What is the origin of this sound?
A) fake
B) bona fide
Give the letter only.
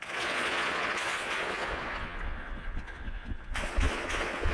A